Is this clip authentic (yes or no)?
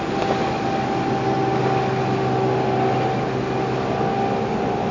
yes